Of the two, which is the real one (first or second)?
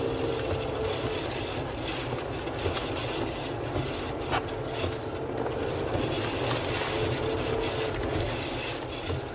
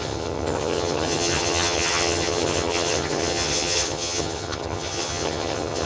first